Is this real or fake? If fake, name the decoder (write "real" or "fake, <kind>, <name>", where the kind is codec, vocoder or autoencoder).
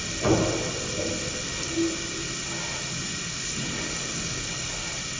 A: real